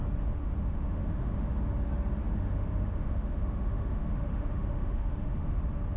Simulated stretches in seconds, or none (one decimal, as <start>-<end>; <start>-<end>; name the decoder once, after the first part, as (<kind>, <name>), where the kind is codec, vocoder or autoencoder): 0.4-1.6 (autoencoder, DAC-VAE); 2.2-5.6